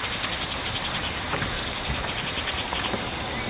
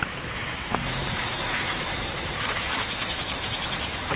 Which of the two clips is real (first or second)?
first